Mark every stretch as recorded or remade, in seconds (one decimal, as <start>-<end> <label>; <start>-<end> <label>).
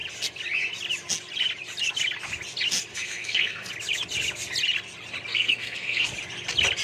0.0-2.9 recorded; 2.9-3.7 remade; 3.7-5.3 recorded; 5.3-6.1 remade; 6.1-6.8 recorded